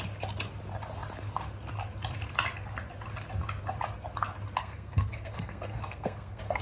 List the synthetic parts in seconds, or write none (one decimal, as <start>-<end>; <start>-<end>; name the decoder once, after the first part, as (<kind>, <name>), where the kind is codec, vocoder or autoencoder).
4.6-6.6 (codec, SNAC)